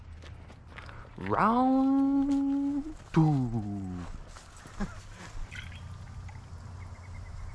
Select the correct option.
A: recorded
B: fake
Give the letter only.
A